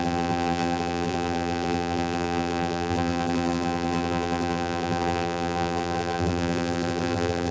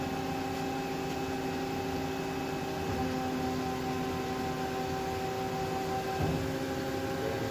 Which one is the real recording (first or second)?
second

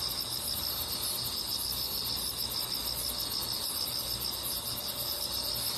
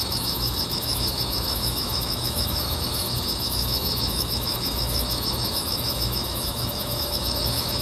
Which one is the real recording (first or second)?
first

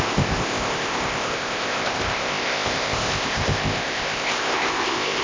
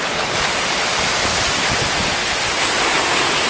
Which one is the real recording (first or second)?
second